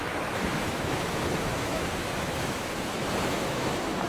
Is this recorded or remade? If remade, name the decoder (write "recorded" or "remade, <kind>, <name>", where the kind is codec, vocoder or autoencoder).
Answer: remade, autoencoder, DAC-VAE